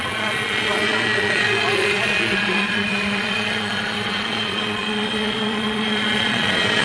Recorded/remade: remade